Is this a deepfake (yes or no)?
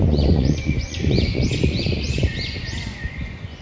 yes